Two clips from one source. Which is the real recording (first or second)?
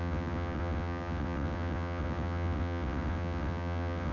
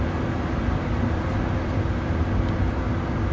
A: second